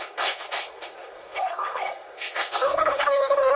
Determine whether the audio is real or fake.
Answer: fake